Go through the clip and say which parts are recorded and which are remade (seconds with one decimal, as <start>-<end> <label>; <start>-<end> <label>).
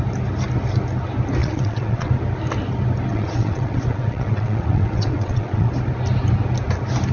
0.0-1.4 recorded; 1.4-2.1 remade; 2.1-3.1 recorded; 3.1-5.7 remade; 5.7-7.1 recorded